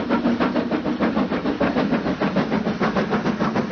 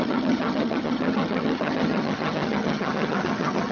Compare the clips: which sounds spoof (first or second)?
second